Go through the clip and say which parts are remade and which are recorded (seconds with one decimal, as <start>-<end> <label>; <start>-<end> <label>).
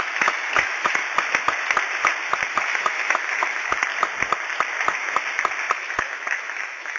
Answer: 0.0-1.0 remade; 1.0-2.5 recorded; 2.5-3.9 remade; 3.9-5.7 recorded; 5.7-7.0 remade